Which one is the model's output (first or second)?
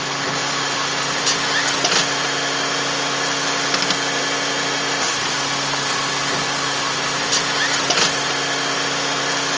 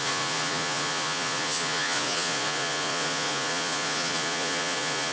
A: second